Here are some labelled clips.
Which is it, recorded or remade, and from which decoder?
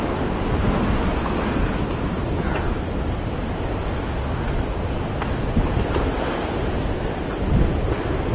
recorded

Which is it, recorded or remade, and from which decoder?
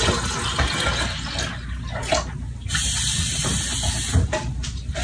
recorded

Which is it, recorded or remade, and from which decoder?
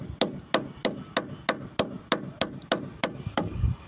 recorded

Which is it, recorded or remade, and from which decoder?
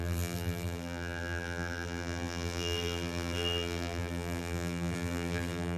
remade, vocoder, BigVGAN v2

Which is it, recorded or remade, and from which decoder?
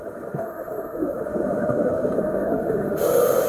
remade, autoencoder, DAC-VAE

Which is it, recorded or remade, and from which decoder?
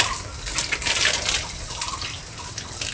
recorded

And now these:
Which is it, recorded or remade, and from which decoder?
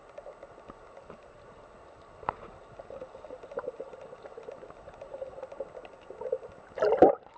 recorded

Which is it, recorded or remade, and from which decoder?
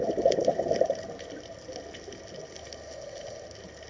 recorded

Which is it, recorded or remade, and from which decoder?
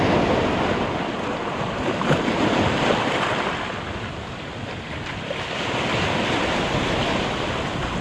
recorded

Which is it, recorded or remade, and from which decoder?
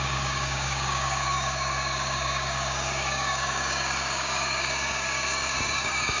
remade, codec, DAC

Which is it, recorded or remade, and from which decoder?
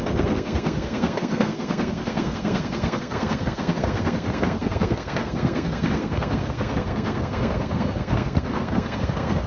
remade, codec, SNAC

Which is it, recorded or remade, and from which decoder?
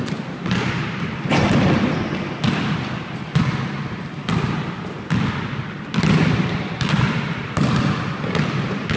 recorded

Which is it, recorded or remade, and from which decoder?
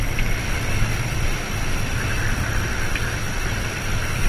recorded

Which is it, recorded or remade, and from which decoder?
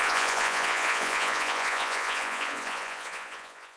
remade, vocoder, Vocos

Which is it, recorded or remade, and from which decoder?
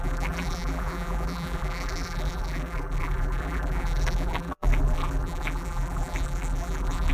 remade, vocoder, BigVGAN v2